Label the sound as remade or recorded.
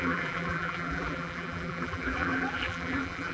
remade